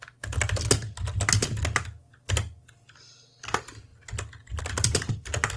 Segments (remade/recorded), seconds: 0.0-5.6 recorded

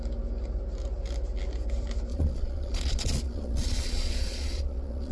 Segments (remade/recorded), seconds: 0.0-2.1 recorded; 2.1-5.1 remade